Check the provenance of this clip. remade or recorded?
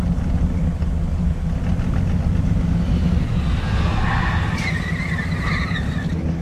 recorded